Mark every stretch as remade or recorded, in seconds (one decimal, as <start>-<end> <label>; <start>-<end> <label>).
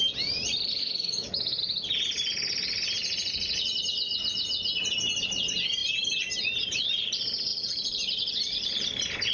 0.0-0.8 recorded; 0.8-1.6 remade; 1.6-9.3 recorded